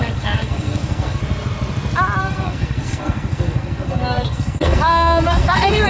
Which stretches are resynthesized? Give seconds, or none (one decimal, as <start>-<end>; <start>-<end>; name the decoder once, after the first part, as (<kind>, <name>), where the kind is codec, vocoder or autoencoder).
0.0-1.2 (codec, SNAC); 2.2-5.9